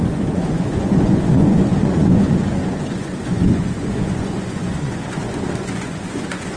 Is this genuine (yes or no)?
no